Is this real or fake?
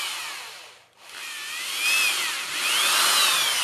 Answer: real